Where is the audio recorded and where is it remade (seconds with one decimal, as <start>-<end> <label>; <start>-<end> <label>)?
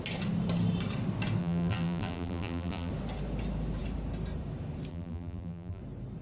0.0-1.4 recorded; 1.4-2.9 remade; 2.9-4.9 recorded; 4.9-5.8 remade; 5.8-6.2 recorded